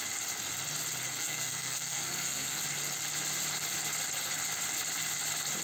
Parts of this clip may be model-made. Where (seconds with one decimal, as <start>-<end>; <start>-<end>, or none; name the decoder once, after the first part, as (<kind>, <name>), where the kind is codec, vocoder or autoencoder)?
1.1-2.6 (codec, SNAC)

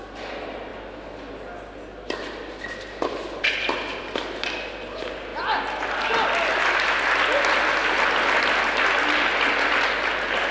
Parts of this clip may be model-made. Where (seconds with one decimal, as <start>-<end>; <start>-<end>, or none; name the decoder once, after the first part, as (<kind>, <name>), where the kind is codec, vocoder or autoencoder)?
none

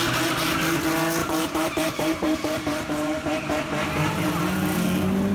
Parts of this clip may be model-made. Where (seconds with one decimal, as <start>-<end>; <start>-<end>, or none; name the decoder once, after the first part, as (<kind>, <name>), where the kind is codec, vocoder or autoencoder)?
1.2-4.4 (vocoder, BigVGAN v2)